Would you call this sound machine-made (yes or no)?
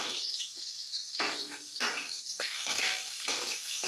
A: yes